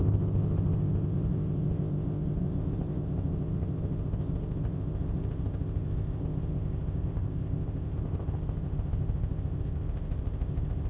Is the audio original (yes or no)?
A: no